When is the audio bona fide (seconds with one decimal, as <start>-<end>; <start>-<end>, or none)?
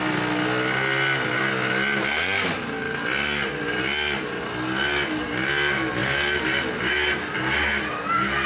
0.0-8.5